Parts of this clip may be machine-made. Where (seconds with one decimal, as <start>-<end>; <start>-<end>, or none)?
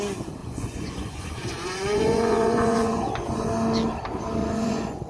0.4-3.5; 4.4-5.1